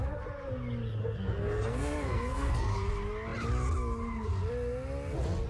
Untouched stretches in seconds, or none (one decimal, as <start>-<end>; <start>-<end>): 0.0-1.0; 2.9-5.5